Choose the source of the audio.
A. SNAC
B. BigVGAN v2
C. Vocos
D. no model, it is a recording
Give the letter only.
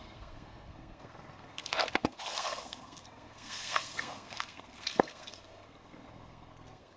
A